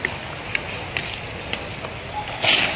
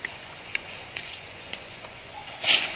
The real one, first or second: first